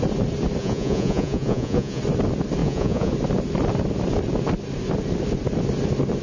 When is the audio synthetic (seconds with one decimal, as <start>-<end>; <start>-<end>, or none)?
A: 0.6-2.0; 2.6-3.1